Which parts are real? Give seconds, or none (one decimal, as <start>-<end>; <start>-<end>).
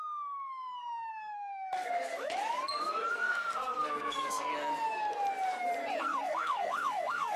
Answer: 2.1-3.1; 4.5-6.0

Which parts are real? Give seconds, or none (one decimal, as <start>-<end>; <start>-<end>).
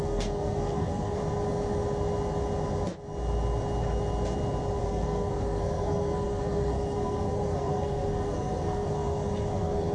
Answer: 1.2-4.8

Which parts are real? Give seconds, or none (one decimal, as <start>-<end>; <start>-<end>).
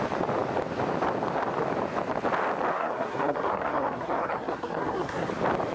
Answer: 0.0-2.7; 5.3-5.7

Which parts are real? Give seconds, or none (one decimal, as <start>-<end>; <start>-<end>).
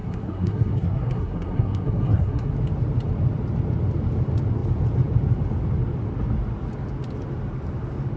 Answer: 2.5-8.2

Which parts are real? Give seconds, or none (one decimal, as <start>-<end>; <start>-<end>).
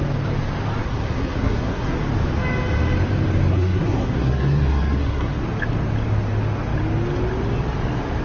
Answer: 0.0-0.8; 2.0-3.5; 5.4-8.2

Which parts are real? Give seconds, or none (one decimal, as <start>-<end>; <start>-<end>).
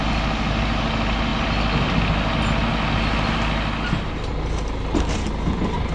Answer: 0.0-5.9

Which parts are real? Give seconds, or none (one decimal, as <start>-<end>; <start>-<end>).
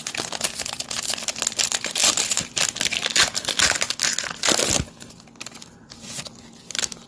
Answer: 0.0-7.1